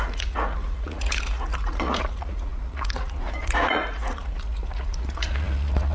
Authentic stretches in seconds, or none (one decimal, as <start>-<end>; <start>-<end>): none